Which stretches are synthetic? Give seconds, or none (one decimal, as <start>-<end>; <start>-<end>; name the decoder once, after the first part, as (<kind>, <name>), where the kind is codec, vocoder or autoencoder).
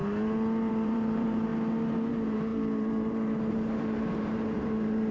0.7-1.5 (vocoder, BigVGAN v2); 2.1-5.1